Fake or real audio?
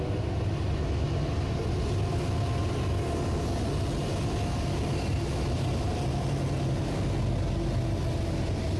real